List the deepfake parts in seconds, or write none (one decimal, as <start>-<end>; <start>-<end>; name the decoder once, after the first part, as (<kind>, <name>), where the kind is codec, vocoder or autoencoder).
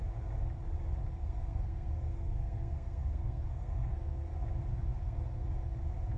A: 1.2-4.3 (codec, SNAC); 4.9-5.5